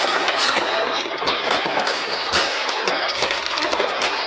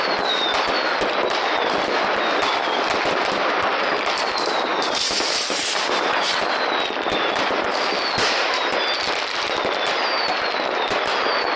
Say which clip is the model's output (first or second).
first